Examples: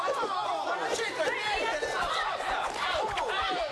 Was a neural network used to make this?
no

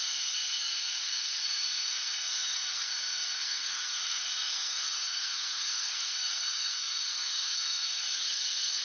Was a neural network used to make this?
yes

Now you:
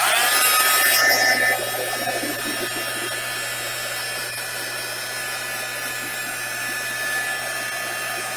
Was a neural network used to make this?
no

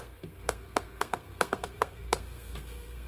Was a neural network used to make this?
yes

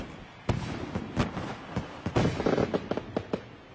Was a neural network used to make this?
no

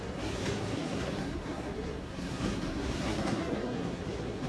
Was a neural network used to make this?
yes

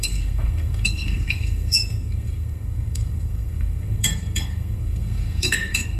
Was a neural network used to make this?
yes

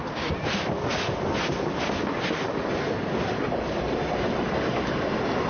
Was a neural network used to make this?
no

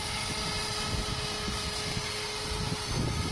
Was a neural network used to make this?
no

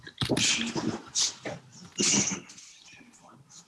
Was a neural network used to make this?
no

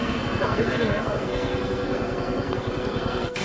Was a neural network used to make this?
yes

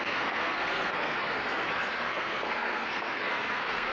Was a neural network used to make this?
yes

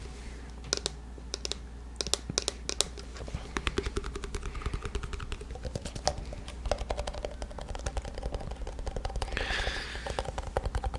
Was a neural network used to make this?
no